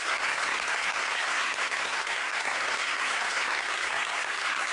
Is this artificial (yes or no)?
yes